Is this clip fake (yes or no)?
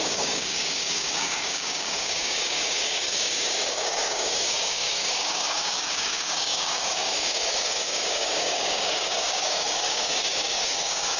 yes